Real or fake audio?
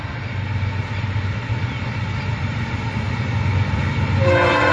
real